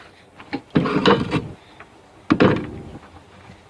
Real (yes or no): yes